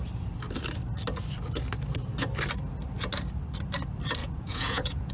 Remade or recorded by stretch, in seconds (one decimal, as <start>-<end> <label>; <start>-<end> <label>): 0.0-4.2 recorded; 4.2-5.1 remade